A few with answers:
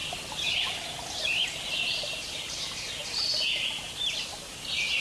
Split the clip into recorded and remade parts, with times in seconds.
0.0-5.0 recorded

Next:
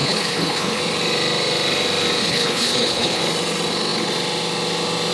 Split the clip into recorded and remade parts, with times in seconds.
0.0-0.8 remade; 0.8-2.2 recorded; 2.2-3.2 remade; 3.2-5.1 recorded